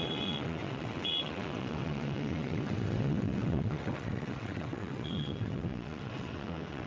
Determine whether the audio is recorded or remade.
remade